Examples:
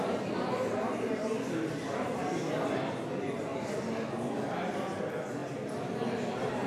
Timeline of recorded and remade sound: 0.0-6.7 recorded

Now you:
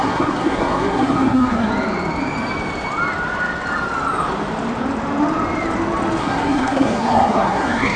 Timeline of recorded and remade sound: 0.0-1.7 remade; 1.7-6.2 recorded; 6.2-8.0 remade

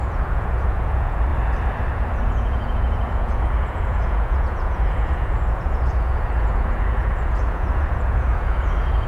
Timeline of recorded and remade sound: 0.0-1.3 remade; 1.3-1.9 recorded; 1.9-9.1 remade

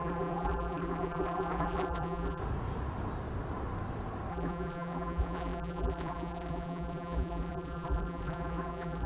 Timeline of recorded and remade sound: 0.0-2.4 remade; 2.4-4.3 recorded; 4.3-9.1 remade

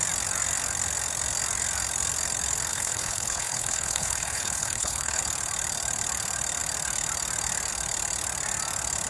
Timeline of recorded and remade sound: 0.0-2.7 recorded; 2.7-5.2 remade; 5.2-9.1 recorded

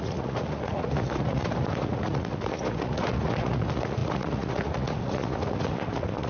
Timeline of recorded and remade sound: 0.0-6.3 remade

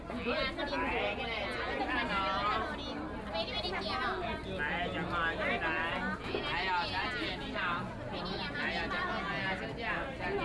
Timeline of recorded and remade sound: 0.0-10.4 recorded

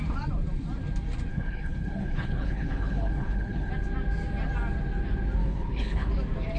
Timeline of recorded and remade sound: 0.0-1.3 recorded; 1.3-3.7 remade; 3.7-5.4 recorded; 5.4-6.1 remade; 6.1-6.6 recorded